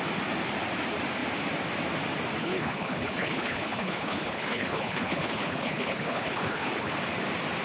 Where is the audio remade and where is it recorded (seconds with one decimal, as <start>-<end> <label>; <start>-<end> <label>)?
0.0-2.4 recorded; 2.4-6.9 remade; 6.9-7.6 recorded